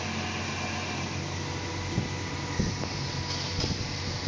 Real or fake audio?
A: real